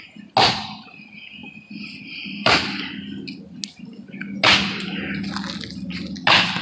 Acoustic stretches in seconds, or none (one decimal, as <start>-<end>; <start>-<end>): 0.0-1.4; 2.5-6.6